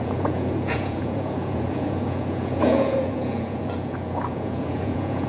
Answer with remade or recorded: remade